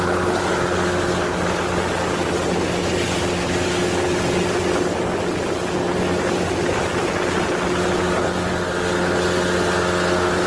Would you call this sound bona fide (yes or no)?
yes